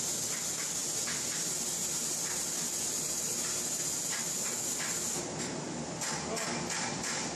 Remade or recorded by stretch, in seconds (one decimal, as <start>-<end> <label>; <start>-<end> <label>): 0.0-7.4 recorded